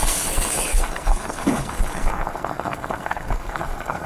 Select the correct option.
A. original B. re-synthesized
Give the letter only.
B